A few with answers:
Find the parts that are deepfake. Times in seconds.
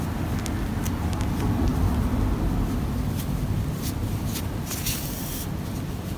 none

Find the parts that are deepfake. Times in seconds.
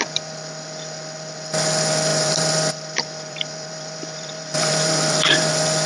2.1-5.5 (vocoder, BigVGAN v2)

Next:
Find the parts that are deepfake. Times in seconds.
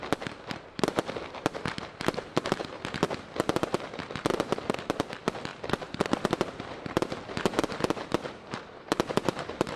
0.0-9.8 (vocoder, BigVGAN v2)